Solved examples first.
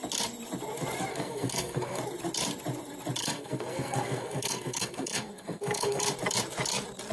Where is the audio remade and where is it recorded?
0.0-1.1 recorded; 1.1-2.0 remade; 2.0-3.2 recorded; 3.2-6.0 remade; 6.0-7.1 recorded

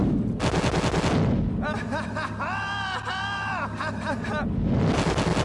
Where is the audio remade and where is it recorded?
0.0-5.4 recorded

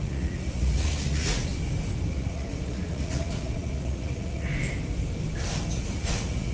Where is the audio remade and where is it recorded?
0.0-1.5 remade; 1.5-2.1 recorded; 2.1-4.5 remade; 4.5-5.7 recorded; 5.7-6.5 remade

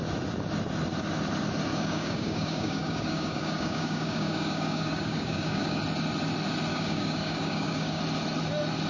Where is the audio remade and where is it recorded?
0.0-1.7 recorded; 1.7-5.8 remade; 5.8-6.7 recorded; 6.7-8.0 remade; 8.0-8.9 recorded

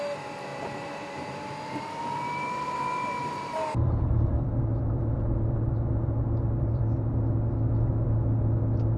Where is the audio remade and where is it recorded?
0.0-0.5 recorded; 0.5-2.0 remade; 2.0-3.2 recorded; 3.2-4.3 remade; 4.3-9.0 recorded

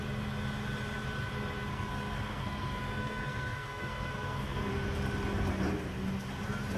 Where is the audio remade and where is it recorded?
0.0-1.7 recorded; 1.7-4.7 remade; 4.7-6.8 recorded

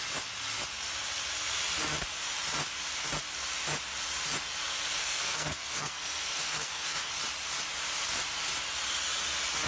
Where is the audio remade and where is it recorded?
0.0-5.0 recorded; 5.0-7.1 remade; 7.1-9.7 recorded

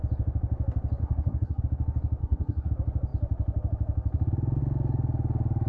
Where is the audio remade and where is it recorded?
0.0-1.0 recorded; 1.0-1.6 remade; 1.6-2.2 recorded; 2.2-2.7 remade; 2.7-5.7 recorded